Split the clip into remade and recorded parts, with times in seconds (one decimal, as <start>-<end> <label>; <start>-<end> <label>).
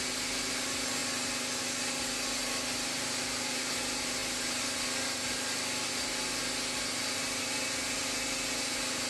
0.0-9.1 recorded